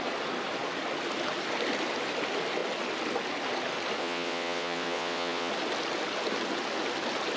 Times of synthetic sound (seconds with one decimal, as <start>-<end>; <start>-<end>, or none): 4.0-5.5